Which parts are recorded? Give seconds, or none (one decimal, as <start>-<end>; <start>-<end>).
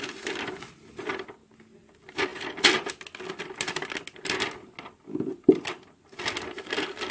0.0-7.1